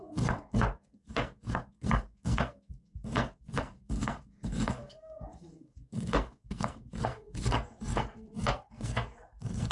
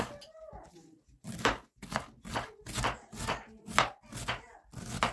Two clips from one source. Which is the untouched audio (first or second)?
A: second